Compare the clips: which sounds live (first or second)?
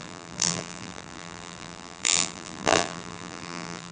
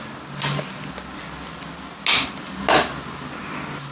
second